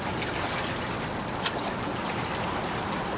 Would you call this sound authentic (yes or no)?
yes